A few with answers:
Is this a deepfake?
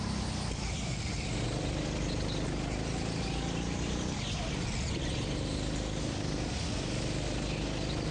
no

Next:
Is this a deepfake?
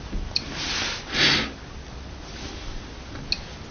no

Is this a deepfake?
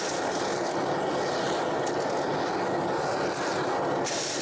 no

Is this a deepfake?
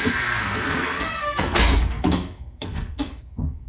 yes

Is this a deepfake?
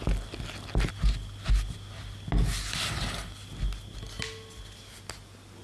no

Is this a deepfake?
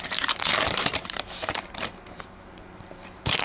yes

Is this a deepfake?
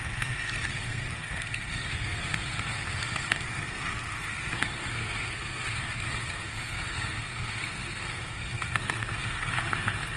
yes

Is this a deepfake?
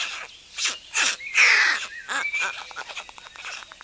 no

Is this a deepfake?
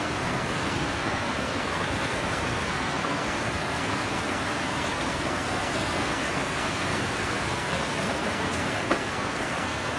yes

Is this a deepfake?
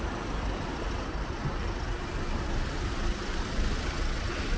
no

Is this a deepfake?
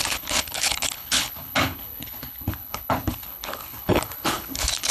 yes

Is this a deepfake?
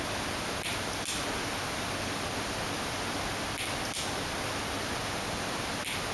no